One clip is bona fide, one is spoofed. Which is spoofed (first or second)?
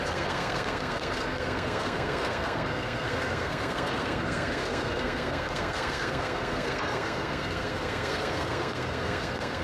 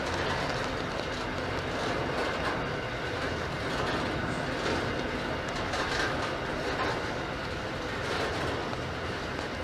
first